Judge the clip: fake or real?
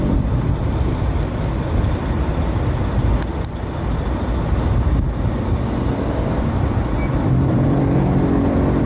real